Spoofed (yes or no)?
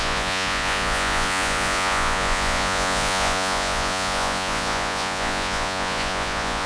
yes